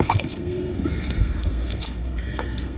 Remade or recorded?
remade